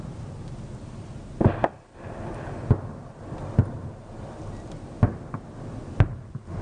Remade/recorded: recorded